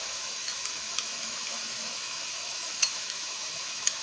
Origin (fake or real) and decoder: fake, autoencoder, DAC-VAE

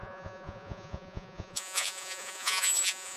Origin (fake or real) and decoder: fake, vocoder, Vocos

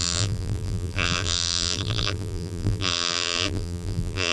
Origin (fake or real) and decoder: fake, vocoder, BigVGAN v2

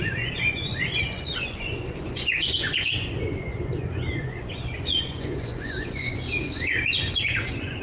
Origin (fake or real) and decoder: fake, vocoder, Vocos